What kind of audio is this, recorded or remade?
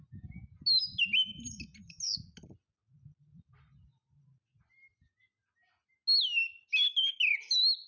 recorded